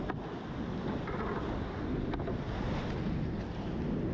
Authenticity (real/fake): real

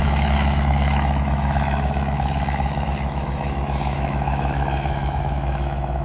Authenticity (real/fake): fake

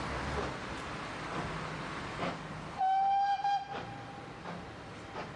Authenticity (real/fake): real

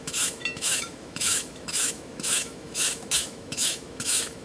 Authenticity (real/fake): fake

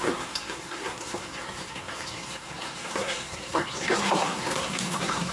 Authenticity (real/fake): fake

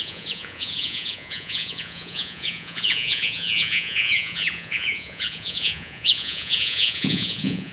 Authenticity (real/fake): fake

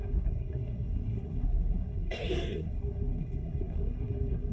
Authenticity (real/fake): fake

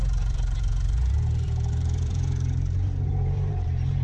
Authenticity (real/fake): fake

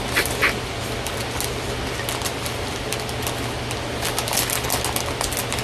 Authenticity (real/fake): real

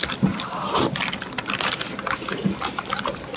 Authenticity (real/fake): real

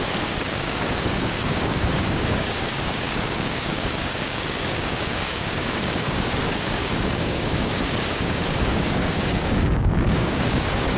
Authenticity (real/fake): fake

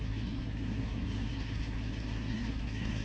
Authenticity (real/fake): fake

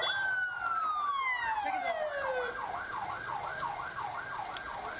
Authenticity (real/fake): real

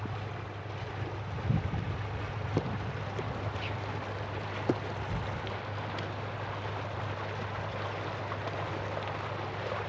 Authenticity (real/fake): real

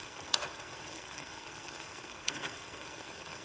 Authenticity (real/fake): fake